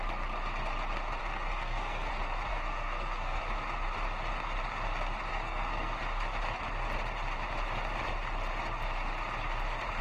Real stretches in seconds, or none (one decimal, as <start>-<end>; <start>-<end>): 0.0-1.2; 2.1-2.5; 3.4-5.3; 6.0-10.0